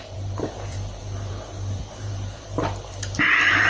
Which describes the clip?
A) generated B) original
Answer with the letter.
A